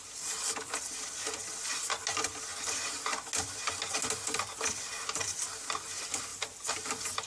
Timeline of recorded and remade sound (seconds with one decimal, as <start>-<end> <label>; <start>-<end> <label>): 0.0-6.3 recorded; 6.3-7.3 remade